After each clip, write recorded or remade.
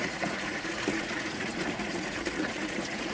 remade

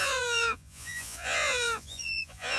remade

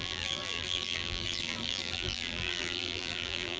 remade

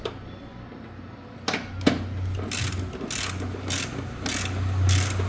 recorded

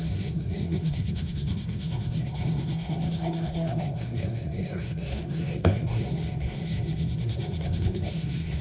remade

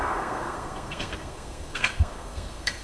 remade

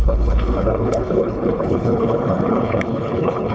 remade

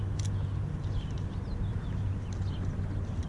recorded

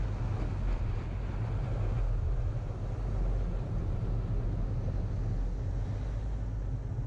recorded